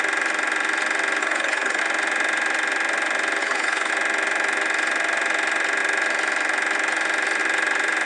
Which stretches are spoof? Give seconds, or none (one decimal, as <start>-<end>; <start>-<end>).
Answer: 1.2-1.8; 3.4-3.9